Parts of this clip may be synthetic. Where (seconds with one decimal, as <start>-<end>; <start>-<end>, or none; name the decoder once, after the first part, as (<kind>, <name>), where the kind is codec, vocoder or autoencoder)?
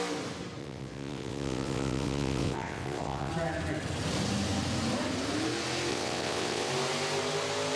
0.6-3.3 (vocoder, WaveNeXt); 5.9-6.7